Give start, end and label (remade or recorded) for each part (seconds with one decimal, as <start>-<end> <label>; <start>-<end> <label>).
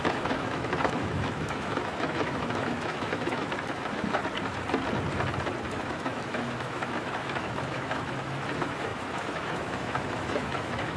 0.0-4.2 remade; 4.2-5.8 recorded; 5.8-11.0 remade